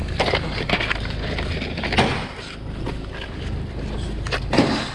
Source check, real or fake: real